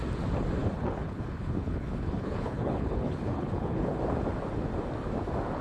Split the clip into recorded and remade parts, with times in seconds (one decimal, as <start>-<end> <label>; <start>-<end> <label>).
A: 0.0-0.6 recorded; 0.6-4.0 remade; 4.0-5.6 recorded